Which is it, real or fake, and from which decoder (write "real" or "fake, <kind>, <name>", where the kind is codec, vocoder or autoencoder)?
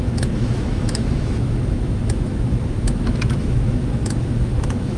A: fake, autoencoder, DAC-VAE